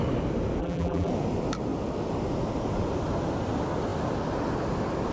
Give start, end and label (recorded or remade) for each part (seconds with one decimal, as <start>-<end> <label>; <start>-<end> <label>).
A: 0.0-0.6 recorded; 0.6-1.1 remade; 1.1-5.1 recorded